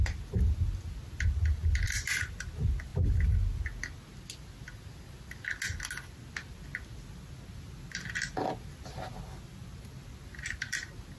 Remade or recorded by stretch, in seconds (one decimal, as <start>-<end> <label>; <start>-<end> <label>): 0.0-11.2 recorded